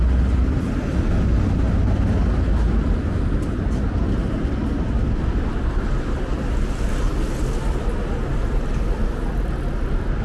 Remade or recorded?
recorded